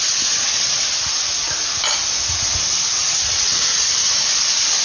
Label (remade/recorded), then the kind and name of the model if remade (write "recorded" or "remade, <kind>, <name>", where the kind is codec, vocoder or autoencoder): recorded